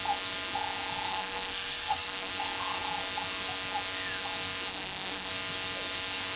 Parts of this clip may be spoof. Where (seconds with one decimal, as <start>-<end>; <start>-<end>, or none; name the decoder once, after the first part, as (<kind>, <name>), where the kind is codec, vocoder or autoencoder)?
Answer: 1.1-2.3 (codec, SNAC); 4.7-5.3